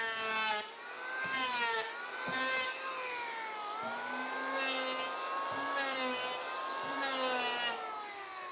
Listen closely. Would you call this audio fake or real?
real